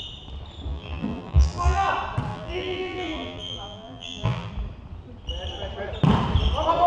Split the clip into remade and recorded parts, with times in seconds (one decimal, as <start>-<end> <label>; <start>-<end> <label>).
0.0-0.7 recorded; 0.7-1.9 remade; 1.9-2.3 recorded; 2.3-4.5 remade; 4.5-6.9 recorded